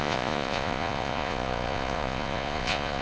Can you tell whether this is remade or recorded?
remade